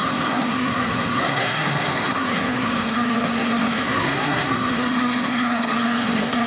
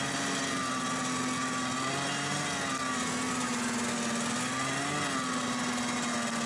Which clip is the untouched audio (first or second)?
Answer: second